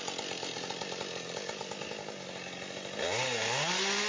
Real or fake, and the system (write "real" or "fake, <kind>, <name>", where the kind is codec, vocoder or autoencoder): real